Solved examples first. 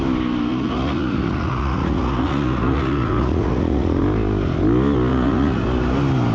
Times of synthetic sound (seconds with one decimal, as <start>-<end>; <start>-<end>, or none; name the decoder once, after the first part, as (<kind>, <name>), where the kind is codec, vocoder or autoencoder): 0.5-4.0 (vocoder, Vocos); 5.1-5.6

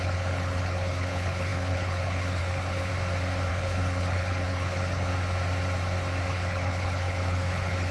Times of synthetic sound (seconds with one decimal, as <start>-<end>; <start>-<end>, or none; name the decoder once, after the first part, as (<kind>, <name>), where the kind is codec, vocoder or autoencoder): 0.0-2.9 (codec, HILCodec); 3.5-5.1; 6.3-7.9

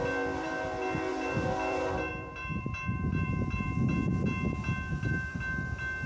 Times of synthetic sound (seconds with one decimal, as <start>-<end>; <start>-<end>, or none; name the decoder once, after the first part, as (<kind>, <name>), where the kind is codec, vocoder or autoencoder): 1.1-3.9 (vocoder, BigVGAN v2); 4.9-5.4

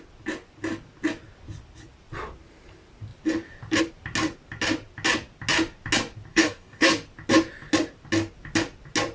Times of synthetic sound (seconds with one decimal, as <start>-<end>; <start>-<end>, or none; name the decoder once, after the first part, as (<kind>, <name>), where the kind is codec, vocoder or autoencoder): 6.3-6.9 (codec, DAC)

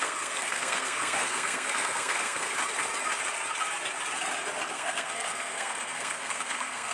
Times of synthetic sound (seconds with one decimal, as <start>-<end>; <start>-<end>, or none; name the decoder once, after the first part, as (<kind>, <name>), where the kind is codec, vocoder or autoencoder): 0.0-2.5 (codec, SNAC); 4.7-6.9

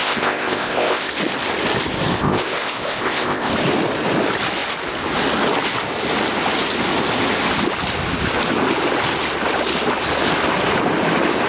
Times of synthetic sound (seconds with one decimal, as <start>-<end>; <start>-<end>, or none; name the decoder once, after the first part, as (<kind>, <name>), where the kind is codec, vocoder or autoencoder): 0.0-1.1 (codec, ZipCodec); 2.1-3.5

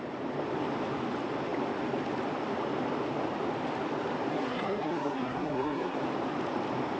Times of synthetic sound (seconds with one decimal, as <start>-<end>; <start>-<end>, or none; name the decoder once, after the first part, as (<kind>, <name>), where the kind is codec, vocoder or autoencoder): 4.3-6.0 (codec, SNAC)